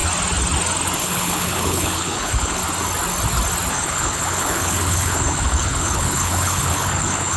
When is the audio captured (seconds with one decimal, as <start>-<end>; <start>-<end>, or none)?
0.0-1.0; 2.6-3.7